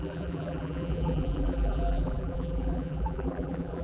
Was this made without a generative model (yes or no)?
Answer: no